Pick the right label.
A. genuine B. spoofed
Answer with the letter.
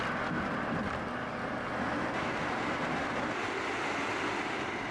A